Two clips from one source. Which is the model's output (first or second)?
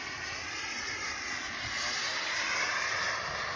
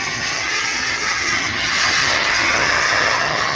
second